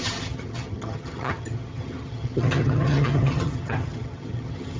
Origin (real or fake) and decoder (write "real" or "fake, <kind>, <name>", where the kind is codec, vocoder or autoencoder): fake, vocoder, HiFi-GAN